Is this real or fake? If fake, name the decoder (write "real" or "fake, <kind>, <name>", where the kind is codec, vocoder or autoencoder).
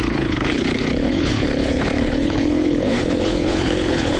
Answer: fake, codec, HILCodec